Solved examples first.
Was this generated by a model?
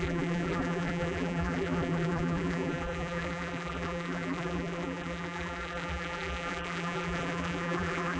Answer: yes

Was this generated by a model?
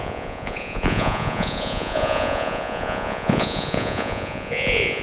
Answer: yes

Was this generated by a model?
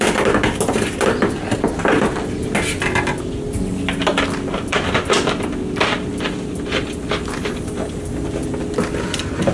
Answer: no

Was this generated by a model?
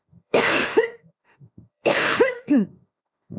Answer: yes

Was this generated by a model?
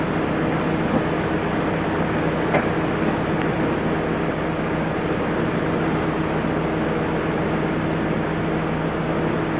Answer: no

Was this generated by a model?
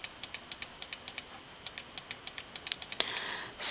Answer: no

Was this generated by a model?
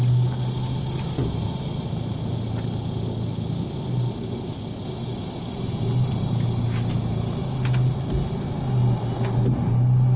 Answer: no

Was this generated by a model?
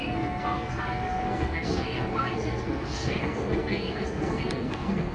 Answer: yes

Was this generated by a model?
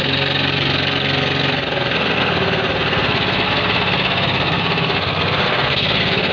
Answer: yes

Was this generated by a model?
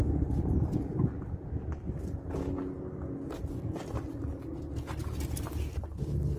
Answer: no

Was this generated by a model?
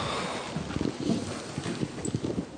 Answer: no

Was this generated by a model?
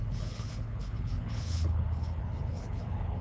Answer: yes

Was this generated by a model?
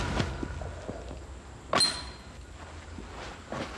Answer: no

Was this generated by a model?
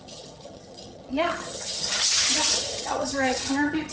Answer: yes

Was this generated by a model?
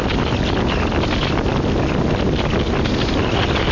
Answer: no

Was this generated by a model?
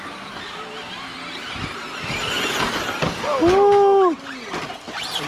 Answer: no